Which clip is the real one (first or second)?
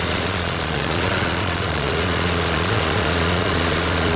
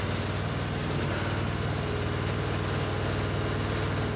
second